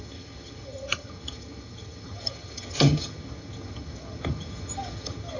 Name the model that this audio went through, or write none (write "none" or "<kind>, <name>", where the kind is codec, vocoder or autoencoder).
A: vocoder, HiFi-GAN